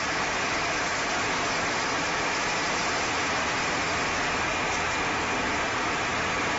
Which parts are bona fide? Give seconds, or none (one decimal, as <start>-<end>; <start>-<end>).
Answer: 1.1-5.1